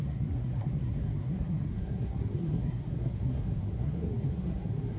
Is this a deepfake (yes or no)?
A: yes